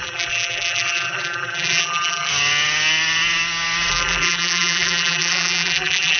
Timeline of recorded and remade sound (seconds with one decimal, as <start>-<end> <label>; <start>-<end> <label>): 0.0-2.3 remade; 2.3-3.9 recorded; 3.9-6.2 remade